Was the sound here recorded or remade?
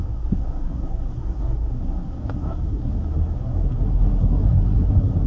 remade